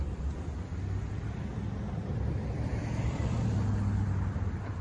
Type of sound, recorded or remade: remade